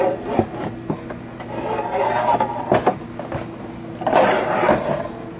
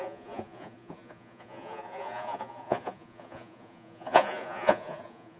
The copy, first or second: second